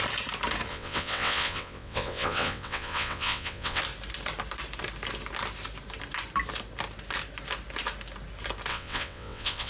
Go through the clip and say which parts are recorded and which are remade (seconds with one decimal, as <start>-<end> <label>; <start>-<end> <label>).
0.0-0.7 recorded; 0.7-3.8 remade; 3.8-8.7 recorded; 8.7-9.7 remade